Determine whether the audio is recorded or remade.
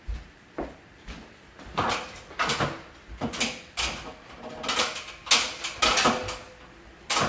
recorded